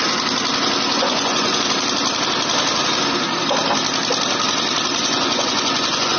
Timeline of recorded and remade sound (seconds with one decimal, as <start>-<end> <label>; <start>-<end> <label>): 0.0-0.9 recorded; 0.9-1.6 remade; 1.6-5.0 recorded; 5.0-6.2 remade